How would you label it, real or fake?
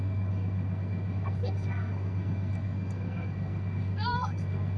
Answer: fake